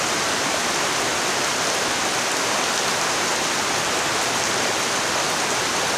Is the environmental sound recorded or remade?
recorded